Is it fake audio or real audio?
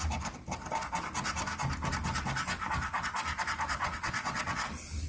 real